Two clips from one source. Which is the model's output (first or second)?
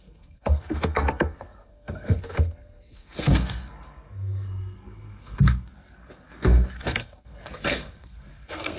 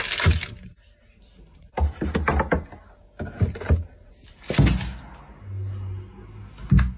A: first